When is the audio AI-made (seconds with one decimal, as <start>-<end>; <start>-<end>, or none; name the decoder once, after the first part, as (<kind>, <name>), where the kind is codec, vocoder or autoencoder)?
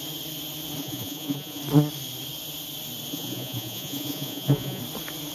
0.8-1.6 (vocoder, Vocos); 3.1-4.8